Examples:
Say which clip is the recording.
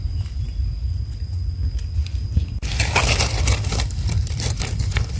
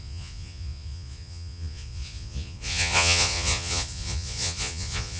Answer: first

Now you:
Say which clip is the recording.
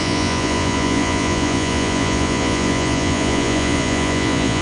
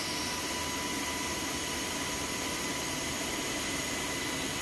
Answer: second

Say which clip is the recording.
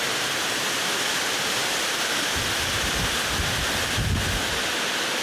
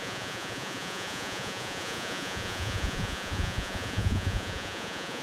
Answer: first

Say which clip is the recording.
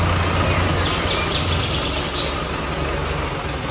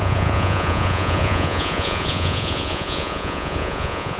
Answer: first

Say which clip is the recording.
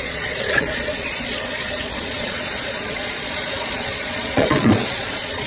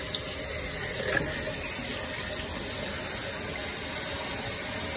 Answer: second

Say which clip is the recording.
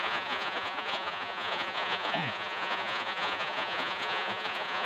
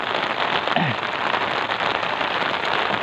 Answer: second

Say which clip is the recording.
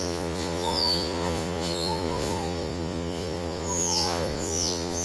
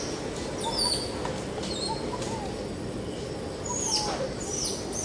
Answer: second